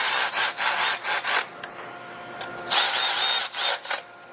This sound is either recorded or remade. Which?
recorded